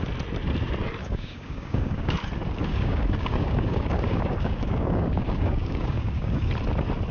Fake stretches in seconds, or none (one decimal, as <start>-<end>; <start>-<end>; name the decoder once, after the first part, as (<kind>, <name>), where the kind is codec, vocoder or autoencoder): 1.0-2.2 (codec, DAC); 2.6-6.5